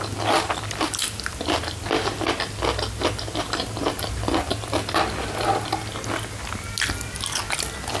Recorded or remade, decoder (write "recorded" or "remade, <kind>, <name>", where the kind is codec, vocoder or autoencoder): recorded